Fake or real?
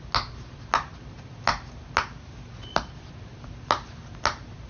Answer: real